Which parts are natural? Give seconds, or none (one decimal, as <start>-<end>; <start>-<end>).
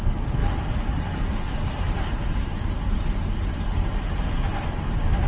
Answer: 0.0-0.4; 3.6-5.3